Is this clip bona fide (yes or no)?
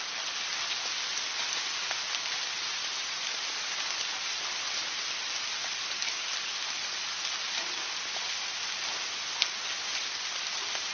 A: yes